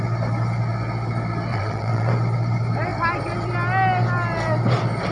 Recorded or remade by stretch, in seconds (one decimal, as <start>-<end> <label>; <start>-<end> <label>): 0.0-1.5 recorded; 1.5-2.1 remade; 2.1-5.1 recorded